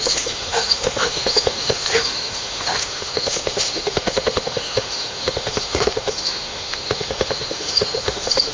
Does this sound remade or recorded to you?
remade